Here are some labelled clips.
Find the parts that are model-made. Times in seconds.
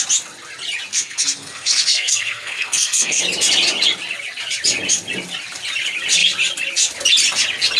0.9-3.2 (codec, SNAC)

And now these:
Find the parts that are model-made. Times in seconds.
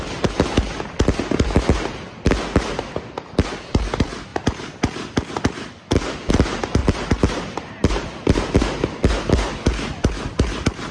none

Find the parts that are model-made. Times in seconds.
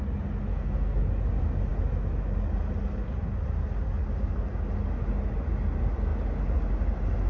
0.5-1.0 (codec, SNAC)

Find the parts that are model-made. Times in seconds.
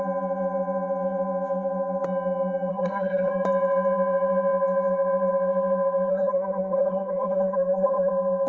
2.7-3.3 (codec, SNAC); 6.1-8.1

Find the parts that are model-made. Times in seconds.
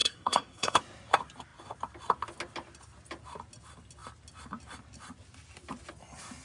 0.0-0.8 (codec, SNAC)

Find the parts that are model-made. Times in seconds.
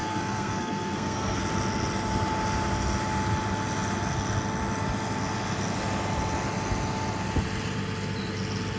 0.0-1.4 (codec, SNAC)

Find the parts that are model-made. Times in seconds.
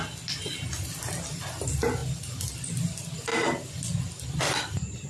none